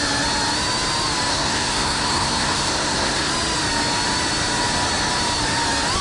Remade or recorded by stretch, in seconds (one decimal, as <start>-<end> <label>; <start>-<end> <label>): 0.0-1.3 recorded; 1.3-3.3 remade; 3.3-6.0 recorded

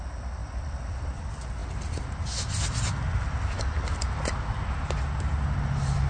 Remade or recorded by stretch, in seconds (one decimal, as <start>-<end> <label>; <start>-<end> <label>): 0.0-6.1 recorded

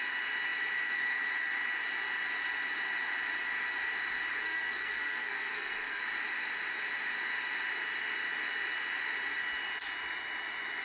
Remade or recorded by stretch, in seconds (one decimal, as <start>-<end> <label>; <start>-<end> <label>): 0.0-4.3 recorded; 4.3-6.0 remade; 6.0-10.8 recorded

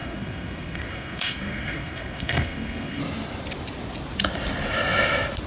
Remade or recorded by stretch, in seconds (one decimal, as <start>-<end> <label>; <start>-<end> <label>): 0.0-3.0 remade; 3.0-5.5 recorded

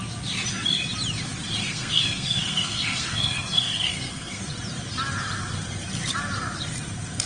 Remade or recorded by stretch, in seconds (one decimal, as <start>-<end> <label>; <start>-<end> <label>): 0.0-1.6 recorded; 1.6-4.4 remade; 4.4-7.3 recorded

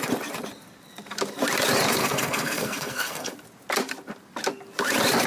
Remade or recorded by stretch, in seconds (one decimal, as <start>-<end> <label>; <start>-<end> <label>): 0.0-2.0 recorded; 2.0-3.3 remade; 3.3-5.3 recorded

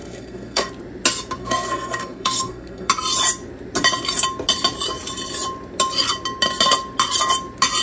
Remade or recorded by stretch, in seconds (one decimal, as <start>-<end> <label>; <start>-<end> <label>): 0.0-0.7 remade; 0.7-1.4 recorded; 1.4-2.9 remade; 2.9-7.8 recorded